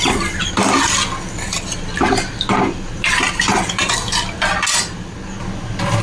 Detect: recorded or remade recorded